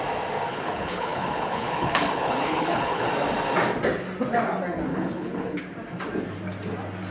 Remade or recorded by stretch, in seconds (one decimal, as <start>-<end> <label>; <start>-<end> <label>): 0.0-0.5 recorded; 0.5-3.1 remade; 3.1-4.9 recorded; 4.9-5.6 remade; 5.6-7.1 recorded